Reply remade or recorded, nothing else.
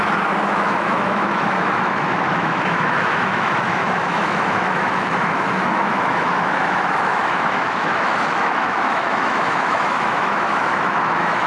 remade